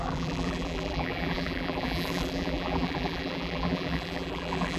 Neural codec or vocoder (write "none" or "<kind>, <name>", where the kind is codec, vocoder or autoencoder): vocoder, BigVGAN v2